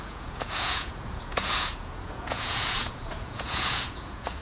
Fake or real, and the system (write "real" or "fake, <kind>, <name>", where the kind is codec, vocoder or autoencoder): fake, vocoder, Vocos